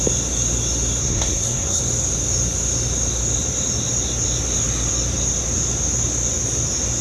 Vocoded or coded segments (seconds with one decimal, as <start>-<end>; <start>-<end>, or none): 1.0-1.8